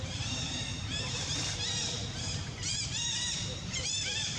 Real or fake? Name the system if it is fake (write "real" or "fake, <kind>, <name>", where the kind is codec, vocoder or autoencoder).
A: fake, vocoder, BigVGAN v2